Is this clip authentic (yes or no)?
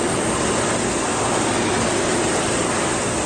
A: yes